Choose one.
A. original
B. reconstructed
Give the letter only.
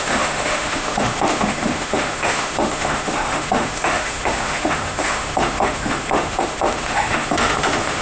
B